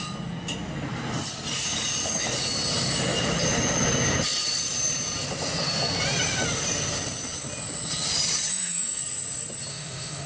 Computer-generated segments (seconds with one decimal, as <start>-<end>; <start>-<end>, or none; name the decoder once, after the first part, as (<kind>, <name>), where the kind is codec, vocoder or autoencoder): 8.5-9.0 (autoencoder, DAC-VAE); 9.7-10.3